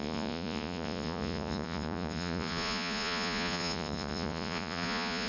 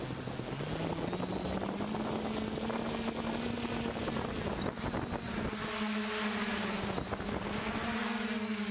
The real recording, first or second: second